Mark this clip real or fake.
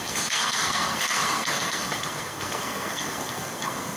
fake